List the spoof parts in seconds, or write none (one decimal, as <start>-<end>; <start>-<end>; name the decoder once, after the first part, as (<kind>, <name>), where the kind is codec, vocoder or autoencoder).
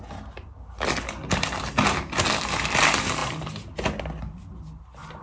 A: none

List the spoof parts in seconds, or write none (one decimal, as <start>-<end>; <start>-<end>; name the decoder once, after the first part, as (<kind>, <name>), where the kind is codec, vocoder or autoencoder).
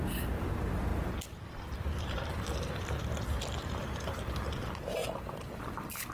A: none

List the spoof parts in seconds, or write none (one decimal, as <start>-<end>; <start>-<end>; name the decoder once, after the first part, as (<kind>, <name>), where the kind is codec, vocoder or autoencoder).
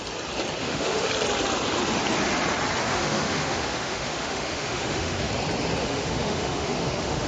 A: 0.6-1.1 (autoencoder, DAC-VAE); 2.8-5.3; 5.8-7.3